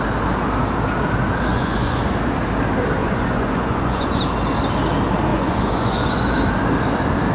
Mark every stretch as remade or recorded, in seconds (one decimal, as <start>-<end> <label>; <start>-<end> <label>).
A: 0.0-1.5 recorded; 1.5-2.0 remade; 2.0-3.0 recorded; 3.0-4.2 remade; 4.2-5.3 recorded; 5.3-6.3 remade; 6.3-7.3 recorded